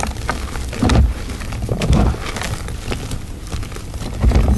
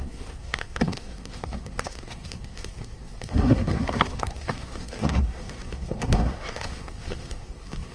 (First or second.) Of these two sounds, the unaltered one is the first